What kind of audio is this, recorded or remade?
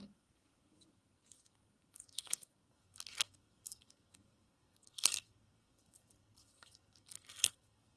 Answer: remade